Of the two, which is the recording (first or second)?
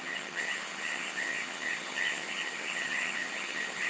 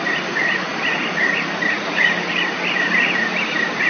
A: second